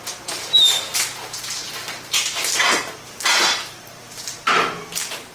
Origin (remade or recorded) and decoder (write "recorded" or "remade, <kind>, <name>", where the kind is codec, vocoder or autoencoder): remade, vocoder, BigVGAN v2